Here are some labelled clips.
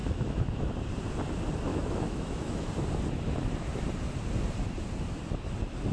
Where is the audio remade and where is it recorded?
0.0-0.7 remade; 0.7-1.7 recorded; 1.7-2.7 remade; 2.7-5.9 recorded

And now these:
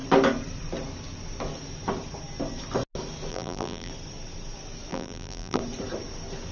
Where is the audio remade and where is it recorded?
0.0-3.3 recorded; 3.3-3.9 remade; 3.9-4.9 recorded; 4.9-5.6 remade; 5.6-6.5 recorded

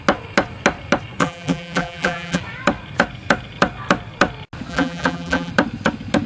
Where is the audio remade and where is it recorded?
0.0-1.2 recorded; 1.2-2.4 remade; 2.4-4.7 recorded; 4.7-5.5 remade; 5.5-6.3 recorded

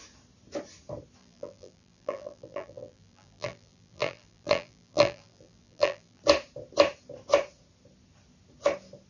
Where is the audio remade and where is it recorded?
0.0-1.2 recorded; 1.2-6.2 remade; 6.2-9.1 recorded

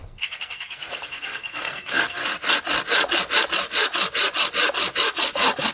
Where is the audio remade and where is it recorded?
0.0-2.2 remade; 2.2-5.7 recorded

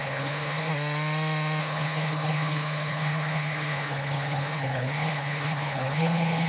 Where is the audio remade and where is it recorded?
0.0-0.7 remade; 0.7-1.6 recorded; 1.6-6.5 remade